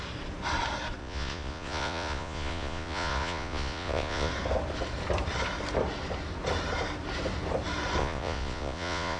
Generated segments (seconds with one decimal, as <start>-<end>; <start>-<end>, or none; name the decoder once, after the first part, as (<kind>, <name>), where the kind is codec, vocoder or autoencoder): 1.0-4.3 (vocoder, Vocos); 8.0-9.2